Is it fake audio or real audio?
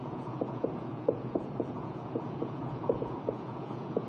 fake